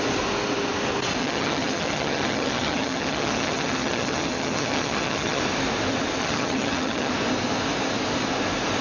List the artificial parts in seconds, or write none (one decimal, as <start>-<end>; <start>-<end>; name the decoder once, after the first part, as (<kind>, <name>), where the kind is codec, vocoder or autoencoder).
1.2-5.4 (vocoder, HiFi-GAN); 6.2-7.1